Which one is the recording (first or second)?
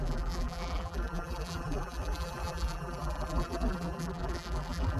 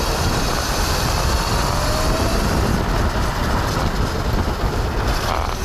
second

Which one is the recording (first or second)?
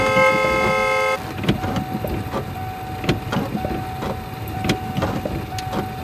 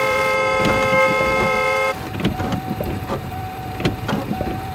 first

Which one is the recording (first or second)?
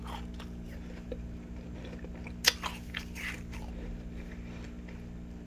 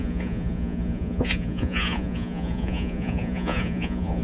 first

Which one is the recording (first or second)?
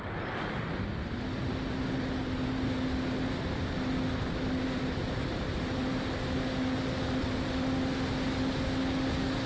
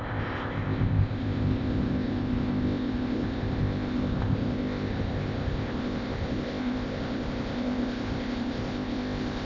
first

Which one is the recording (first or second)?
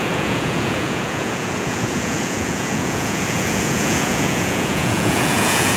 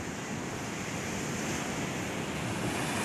second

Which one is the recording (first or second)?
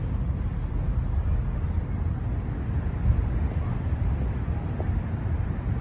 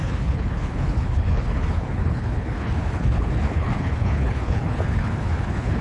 first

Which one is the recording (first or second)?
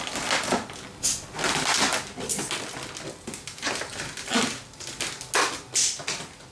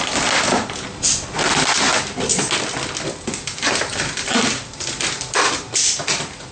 first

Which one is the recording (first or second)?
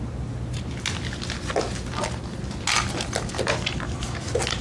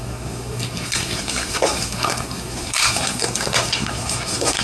first